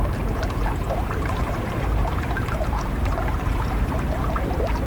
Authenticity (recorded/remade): remade